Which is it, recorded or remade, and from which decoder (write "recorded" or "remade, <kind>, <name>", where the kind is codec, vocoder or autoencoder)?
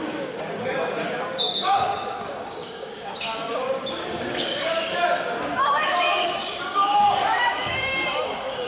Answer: remade, codec, DAC